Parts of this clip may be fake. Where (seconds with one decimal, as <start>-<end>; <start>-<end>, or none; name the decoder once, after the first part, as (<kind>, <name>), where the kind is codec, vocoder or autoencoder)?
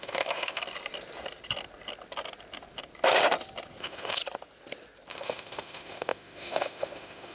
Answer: 0.0-0.6 (autoencoder, DAC-VAE); 3.8-4.2; 5.1-7.3